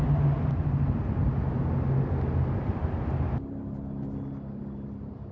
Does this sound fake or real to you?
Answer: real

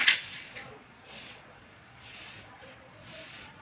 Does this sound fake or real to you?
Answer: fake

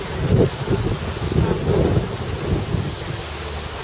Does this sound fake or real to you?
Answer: real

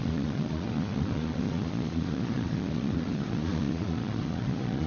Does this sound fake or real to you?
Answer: fake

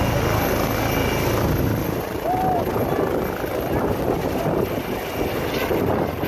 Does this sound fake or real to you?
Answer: real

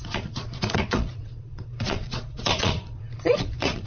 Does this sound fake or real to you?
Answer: fake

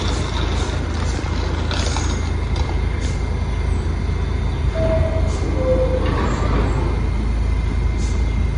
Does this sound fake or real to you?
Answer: real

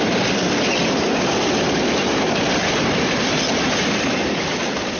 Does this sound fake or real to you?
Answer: real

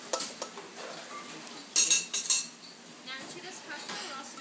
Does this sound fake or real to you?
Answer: real